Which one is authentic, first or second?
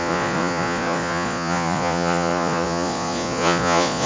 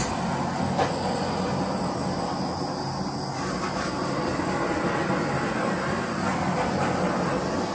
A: second